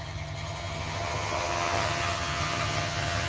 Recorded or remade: remade